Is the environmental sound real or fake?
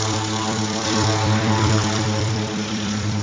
fake